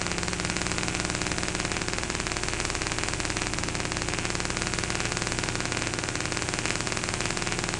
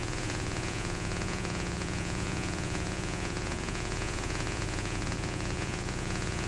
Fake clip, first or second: second